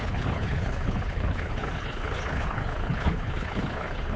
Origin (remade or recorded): remade